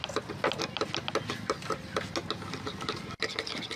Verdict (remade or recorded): recorded